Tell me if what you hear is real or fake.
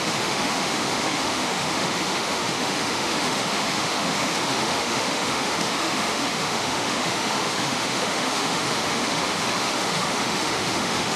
fake